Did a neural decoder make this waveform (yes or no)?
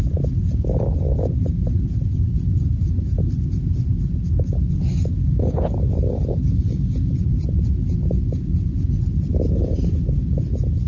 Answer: no